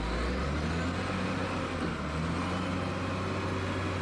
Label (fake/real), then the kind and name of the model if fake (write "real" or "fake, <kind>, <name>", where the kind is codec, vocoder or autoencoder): real